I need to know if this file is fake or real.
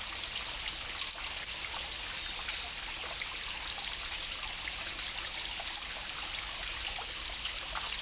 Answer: real